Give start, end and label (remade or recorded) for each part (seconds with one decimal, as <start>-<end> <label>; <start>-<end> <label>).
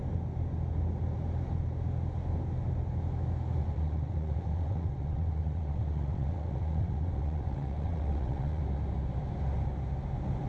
0.0-3.6 recorded; 3.6-8.6 remade; 8.6-10.5 recorded